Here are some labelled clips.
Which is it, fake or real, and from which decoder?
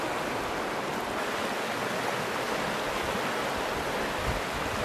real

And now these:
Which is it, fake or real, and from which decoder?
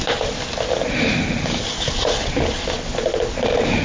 real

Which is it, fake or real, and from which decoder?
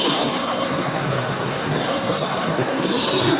fake, codec, SNAC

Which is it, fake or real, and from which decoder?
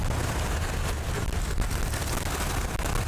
real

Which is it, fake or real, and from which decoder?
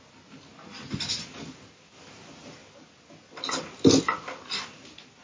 real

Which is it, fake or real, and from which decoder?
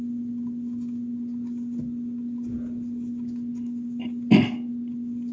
real